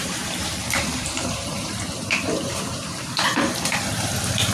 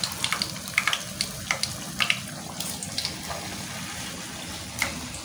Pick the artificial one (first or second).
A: first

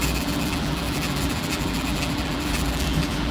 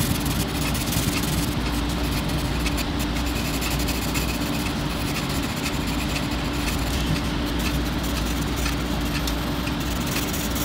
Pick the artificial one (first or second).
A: first